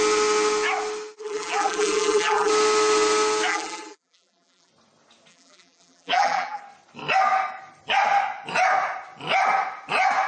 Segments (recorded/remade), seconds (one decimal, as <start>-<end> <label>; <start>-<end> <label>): 0.0-1.2 recorded; 1.2-2.5 remade; 2.5-3.5 recorded; 3.5-4.7 remade; 4.7-5.3 recorded; 5.3-6.6 remade; 6.6-10.3 recorded